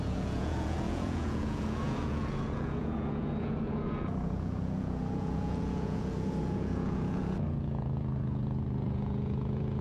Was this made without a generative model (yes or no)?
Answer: no